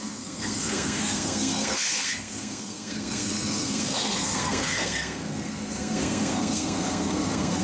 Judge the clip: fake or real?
fake